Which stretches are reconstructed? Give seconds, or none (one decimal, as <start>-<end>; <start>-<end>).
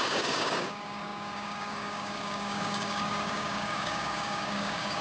0.0-5.0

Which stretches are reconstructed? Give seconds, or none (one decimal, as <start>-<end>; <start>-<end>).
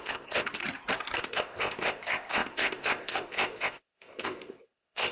0.0-0.6; 1.2-5.1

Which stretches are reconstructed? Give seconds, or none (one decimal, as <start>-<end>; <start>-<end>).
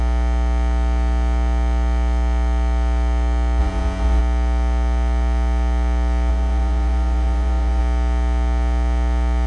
3.6-4.2; 6.3-7.8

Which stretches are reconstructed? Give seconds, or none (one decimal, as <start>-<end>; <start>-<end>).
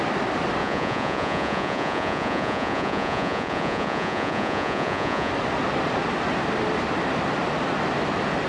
0.6-5.3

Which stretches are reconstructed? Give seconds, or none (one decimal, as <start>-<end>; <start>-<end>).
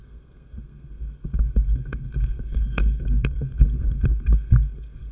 0.0-5.1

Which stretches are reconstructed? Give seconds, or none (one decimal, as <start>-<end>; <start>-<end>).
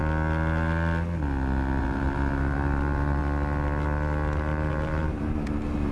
1.8-3.2; 4.7-5.9